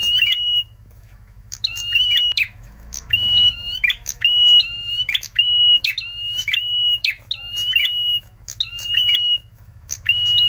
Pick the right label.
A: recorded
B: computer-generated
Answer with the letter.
B